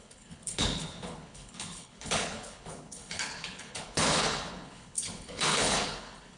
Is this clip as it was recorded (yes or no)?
no